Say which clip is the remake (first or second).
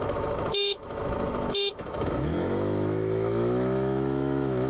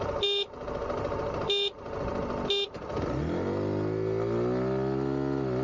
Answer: first